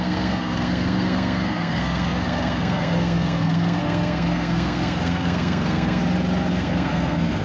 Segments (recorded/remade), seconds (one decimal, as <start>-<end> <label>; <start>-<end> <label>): 0.0-6.0 remade; 6.0-6.5 recorded; 6.5-7.4 remade